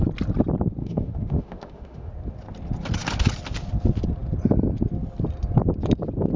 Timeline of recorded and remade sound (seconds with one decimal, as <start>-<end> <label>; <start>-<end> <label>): 0.0-0.8 recorded; 0.8-2.1 remade; 2.1-6.4 recorded